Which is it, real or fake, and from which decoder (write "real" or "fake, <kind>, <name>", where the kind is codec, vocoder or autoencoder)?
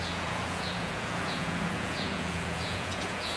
fake, vocoder, Vocos